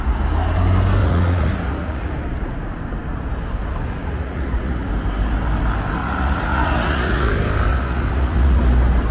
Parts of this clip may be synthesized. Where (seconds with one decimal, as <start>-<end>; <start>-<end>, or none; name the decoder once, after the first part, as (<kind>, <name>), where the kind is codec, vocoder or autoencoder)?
1.0-2.1 (vocoder, Vocos); 4.0-4.9; 6.0-7.3; 7.7-8.6